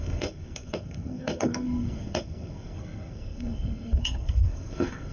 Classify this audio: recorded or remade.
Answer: remade